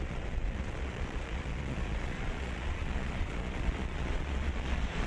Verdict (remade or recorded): remade